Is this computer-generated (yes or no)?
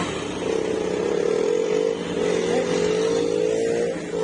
no